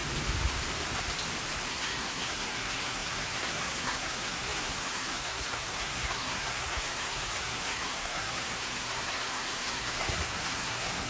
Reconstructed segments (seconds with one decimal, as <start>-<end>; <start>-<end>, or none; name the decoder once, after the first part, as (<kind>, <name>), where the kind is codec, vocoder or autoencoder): 1.7-11.1 (codec, SNAC)